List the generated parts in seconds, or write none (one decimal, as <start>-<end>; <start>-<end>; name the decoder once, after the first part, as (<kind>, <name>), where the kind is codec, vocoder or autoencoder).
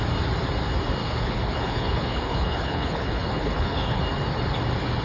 1.0-4.0 (codec, HILCodec)